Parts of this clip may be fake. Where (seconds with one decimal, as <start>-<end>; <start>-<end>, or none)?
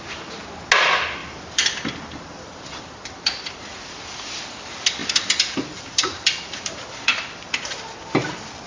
1.2-4.4; 5.0-8.1